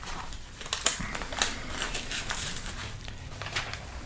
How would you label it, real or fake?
fake